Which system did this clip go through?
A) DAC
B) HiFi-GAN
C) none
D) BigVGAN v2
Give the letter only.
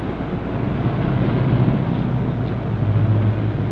C